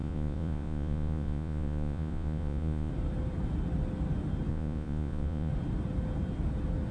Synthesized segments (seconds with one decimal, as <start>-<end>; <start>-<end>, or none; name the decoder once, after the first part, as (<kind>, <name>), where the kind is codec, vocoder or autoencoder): 0.0-2.9 (vocoder, Vocos); 4.5-5.5